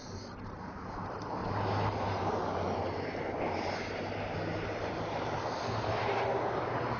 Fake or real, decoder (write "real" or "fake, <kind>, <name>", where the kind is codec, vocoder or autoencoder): real